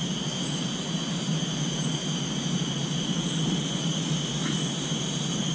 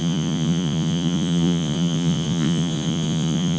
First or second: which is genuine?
first